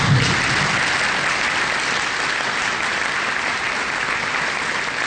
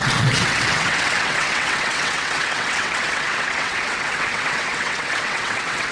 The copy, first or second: second